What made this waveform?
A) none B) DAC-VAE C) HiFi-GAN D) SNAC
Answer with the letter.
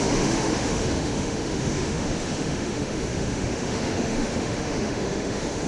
B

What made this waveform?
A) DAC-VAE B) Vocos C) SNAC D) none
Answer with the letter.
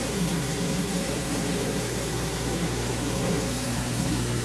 C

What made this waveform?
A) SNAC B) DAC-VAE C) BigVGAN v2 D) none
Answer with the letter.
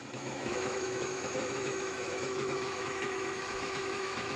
B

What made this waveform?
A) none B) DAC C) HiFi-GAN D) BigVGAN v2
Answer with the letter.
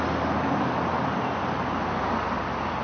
A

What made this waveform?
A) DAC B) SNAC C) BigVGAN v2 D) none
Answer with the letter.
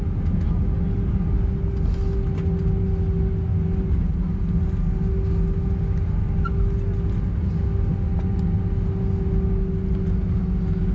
D